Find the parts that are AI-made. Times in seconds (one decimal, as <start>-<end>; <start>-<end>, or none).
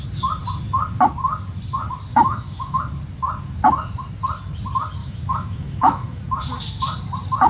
2.1-2.8; 5.0-6.2